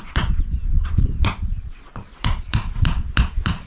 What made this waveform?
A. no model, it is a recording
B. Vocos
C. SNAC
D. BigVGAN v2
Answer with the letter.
B